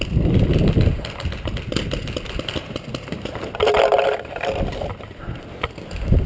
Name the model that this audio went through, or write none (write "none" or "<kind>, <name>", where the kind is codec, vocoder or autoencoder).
none